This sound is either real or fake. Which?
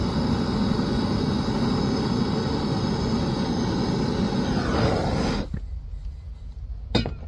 real